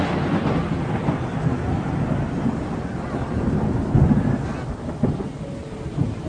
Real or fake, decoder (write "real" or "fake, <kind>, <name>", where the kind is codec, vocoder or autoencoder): real